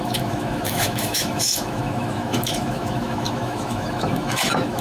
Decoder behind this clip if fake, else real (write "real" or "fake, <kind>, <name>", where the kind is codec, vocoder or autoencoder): fake, autoencoder, DAC-VAE